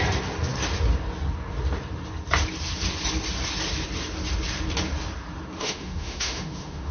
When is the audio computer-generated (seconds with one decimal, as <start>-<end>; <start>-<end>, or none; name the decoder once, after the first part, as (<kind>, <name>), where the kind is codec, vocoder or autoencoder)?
5.6-6.9 (autoencoder, DAC-VAE)